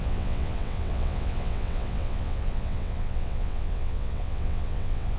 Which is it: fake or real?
fake